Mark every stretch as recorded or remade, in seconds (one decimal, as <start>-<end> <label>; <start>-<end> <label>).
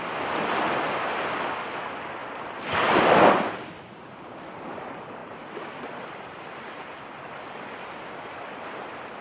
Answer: 0.0-2.2 recorded; 2.2-3.3 remade; 3.3-9.2 recorded